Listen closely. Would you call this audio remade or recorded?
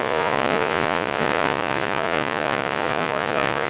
remade